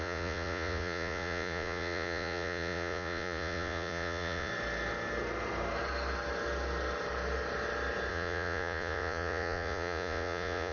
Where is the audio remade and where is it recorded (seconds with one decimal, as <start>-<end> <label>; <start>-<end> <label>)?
0.0-4.5 remade; 4.5-8.1 recorded; 8.1-10.7 remade